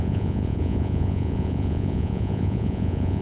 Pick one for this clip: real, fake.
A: fake